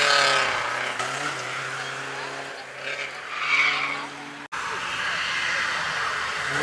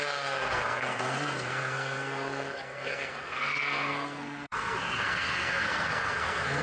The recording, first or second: first